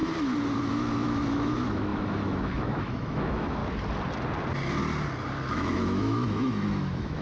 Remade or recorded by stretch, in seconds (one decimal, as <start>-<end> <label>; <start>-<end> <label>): 0.0-0.6 recorded; 0.6-3.6 remade; 3.6-5.5 recorded; 5.5-7.2 remade